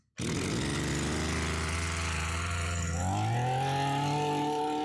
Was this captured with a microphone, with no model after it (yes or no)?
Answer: yes